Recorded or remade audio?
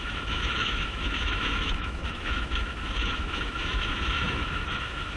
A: remade